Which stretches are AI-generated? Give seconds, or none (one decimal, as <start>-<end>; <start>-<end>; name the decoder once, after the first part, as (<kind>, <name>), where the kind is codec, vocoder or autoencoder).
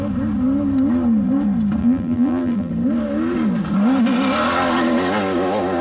1.8-2.7 (vocoder, BigVGAN v2)